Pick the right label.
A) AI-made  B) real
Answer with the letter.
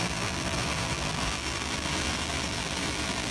A